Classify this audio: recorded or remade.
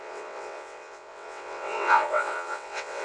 remade